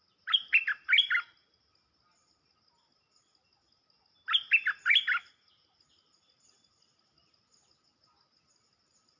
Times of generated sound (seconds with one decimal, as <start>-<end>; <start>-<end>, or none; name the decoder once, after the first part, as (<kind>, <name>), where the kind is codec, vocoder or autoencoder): none